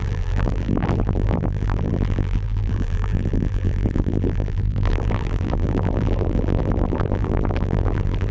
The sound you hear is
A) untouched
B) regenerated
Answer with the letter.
B